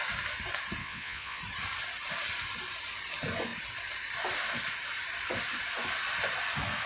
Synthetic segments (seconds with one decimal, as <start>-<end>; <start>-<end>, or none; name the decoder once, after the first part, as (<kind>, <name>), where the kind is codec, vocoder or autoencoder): 0.8-1.4 (vocoder, WaveNeXt)